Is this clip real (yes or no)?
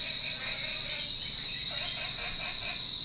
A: yes